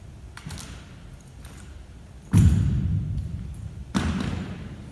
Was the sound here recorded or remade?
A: recorded